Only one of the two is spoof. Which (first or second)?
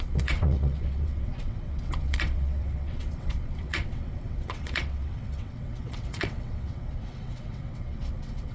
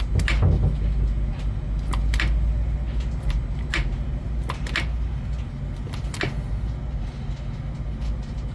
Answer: first